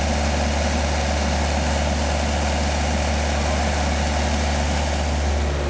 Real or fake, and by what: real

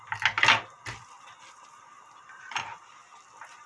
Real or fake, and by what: real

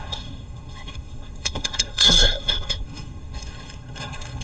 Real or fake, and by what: fake, codec, SNAC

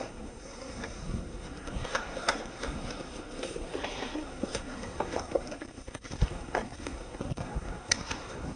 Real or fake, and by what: fake, codec, SNAC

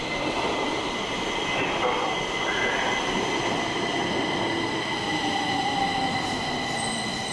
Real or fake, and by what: real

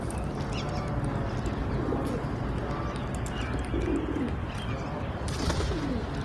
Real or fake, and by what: real